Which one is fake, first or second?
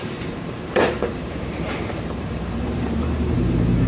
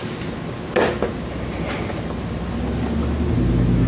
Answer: first